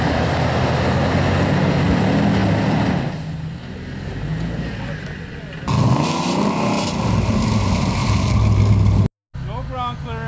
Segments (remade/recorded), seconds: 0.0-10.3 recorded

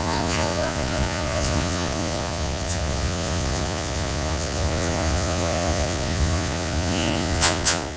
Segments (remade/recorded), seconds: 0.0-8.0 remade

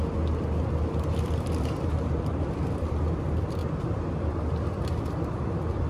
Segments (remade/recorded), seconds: 0.0-3.6 remade; 3.6-5.0 recorded; 5.0-5.9 remade